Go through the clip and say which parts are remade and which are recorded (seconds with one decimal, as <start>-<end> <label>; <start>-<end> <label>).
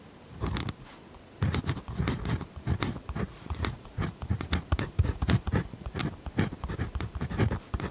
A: 0.0-3.3 recorded; 3.3-6.0 remade; 6.0-7.9 recorded